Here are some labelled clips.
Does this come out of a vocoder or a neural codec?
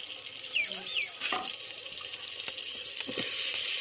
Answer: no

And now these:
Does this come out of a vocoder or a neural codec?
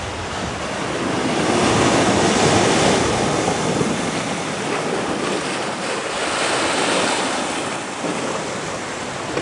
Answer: no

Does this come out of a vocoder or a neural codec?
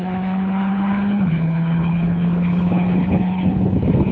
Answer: yes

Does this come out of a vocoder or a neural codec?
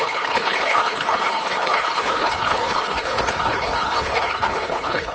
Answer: yes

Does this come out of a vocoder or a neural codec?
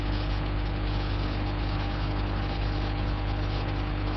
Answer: yes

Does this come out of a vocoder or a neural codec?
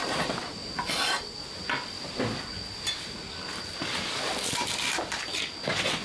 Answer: no